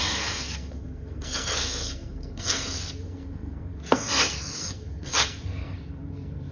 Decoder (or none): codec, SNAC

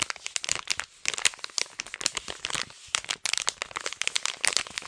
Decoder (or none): none